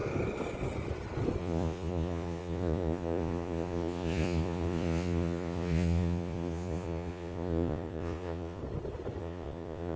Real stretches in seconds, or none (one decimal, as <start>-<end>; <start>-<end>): 0.0-1.4; 8.6-9.2